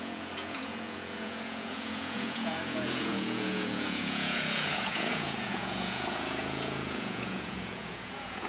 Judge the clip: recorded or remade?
remade